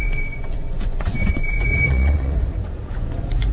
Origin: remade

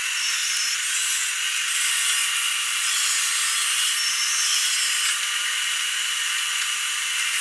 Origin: recorded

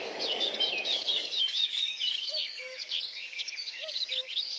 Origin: remade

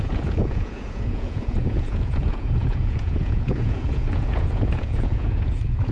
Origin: remade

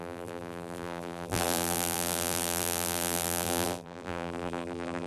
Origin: remade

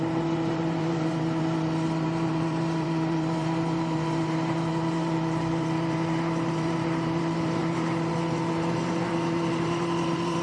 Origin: remade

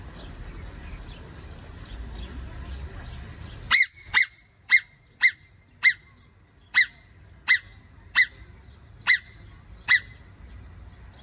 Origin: recorded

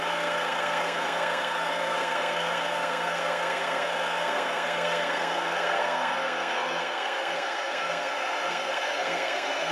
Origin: remade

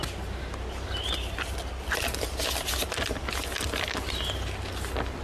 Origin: recorded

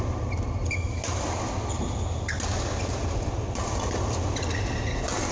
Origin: recorded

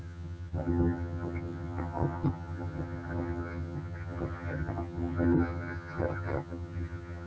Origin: remade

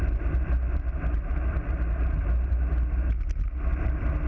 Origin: recorded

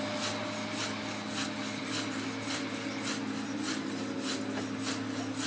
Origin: recorded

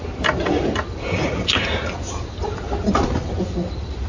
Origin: recorded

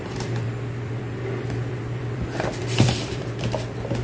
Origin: remade